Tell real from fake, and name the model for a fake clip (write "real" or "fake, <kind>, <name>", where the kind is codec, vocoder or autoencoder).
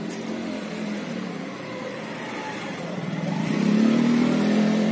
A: fake, vocoder, BigVGAN v2